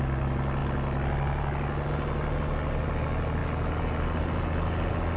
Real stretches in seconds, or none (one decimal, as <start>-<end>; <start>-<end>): 0.0-5.2